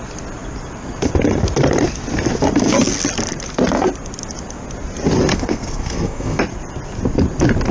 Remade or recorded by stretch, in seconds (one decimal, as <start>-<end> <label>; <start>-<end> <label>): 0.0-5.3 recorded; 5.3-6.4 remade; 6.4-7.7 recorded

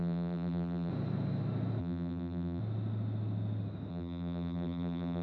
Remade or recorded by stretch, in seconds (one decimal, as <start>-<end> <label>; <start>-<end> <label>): 0.0-0.9 remade; 0.9-1.8 recorded; 1.8-2.6 remade; 2.6-3.9 recorded; 3.9-5.2 remade

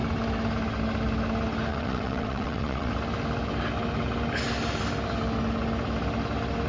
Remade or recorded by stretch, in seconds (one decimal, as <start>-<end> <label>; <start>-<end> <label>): 0.0-1.7 recorded; 1.7-2.9 remade; 2.9-6.7 recorded

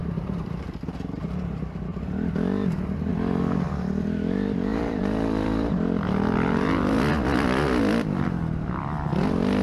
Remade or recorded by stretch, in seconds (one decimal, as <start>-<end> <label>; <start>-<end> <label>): 0.0-0.6 remade; 0.6-4.7 recorded; 4.7-7.1 remade; 7.1-9.6 recorded

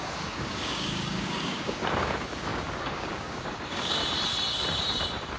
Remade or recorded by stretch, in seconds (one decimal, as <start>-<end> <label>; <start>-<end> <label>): 0.0-4.0 remade; 4.0-5.4 recorded

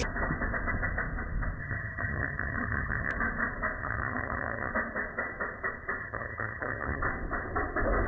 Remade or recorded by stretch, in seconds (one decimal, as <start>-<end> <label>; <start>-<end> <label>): 0.0-1.6 recorded; 1.6-3.1 remade; 3.1-3.8 recorded; 3.8-4.7 remade; 4.7-6.0 recorded; 6.0-7.0 remade; 7.0-8.1 recorded